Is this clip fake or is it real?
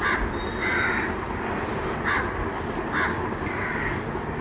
real